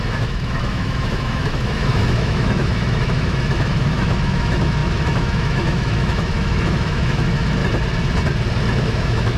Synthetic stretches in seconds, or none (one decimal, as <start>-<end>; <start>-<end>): 0.0-7.6; 8.8-9.4